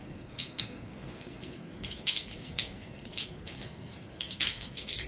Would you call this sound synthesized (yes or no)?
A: yes